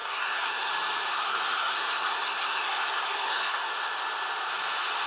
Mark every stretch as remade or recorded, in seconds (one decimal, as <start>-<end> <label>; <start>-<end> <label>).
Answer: 0.0-0.7 remade; 0.7-1.1 recorded; 1.1-3.7 remade; 3.7-5.1 recorded